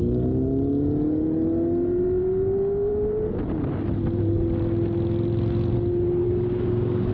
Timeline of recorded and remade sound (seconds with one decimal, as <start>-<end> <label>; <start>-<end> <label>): 0.0-2.2 recorded; 2.2-2.9 remade; 2.9-6.2 recorded; 6.2-7.1 remade